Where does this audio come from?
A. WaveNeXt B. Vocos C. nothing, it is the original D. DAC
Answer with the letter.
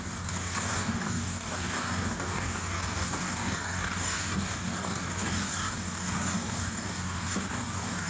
D